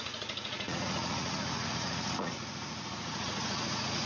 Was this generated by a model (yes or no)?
yes